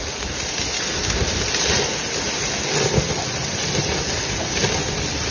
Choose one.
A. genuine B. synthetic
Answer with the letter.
A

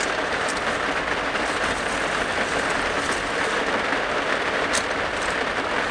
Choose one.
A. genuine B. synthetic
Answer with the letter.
B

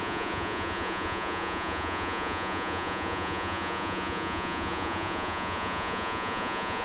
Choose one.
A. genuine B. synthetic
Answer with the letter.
B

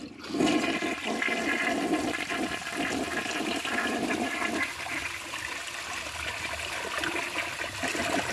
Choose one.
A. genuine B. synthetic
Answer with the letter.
A